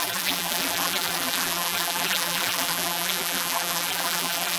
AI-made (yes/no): yes